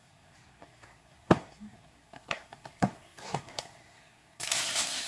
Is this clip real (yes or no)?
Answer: no